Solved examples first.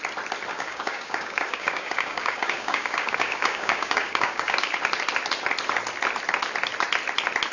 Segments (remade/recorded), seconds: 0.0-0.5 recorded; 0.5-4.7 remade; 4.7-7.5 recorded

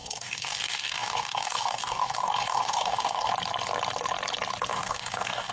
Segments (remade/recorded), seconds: 0.0-3.3 remade; 3.3-4.7 recorded; 4.7-5.5 remade